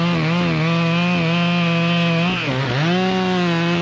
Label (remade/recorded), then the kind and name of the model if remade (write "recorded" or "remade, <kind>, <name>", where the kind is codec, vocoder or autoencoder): recorded